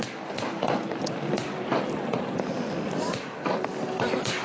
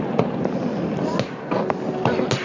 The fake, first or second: first